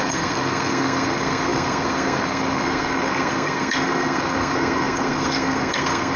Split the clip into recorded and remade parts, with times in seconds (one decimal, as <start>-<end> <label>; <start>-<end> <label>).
0.0-6.2 remade